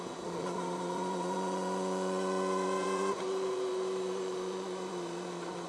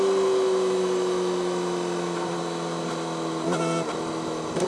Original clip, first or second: second